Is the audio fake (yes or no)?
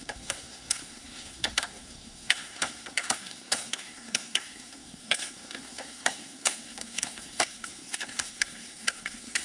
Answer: yes